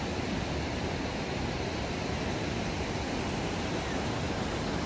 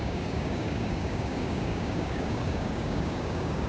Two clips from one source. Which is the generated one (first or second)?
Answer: second